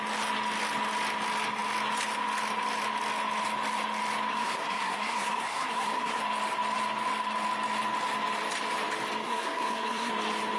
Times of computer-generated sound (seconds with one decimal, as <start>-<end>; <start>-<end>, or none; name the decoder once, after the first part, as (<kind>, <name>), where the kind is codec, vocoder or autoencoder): 4.3-6.2 (codec, SNAC); 9.2-10.1